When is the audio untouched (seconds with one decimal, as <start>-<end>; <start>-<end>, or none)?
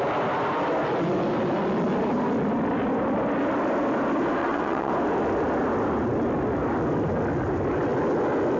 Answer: 0.0-4.4; 4.9-8.6